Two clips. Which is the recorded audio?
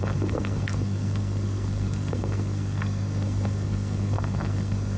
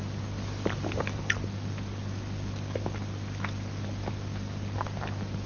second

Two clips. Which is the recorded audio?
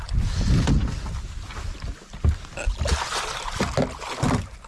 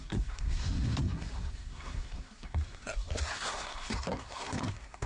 first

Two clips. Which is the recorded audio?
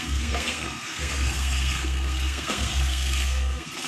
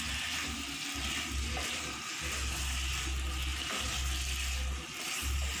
second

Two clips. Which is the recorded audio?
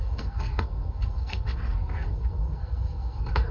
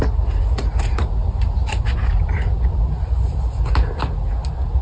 second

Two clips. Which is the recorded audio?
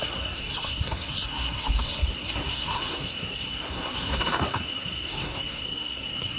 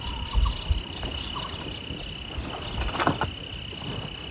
second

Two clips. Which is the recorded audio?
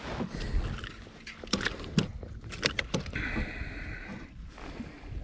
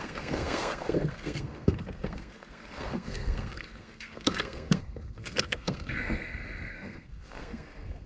first